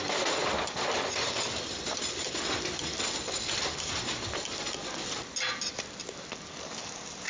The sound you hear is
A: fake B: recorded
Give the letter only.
B